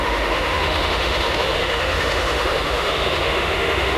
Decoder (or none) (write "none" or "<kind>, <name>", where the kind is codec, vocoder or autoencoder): autoencoder, DAC-VAE